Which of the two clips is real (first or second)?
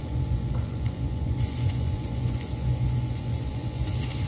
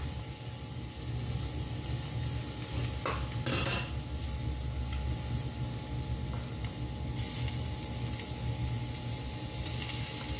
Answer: second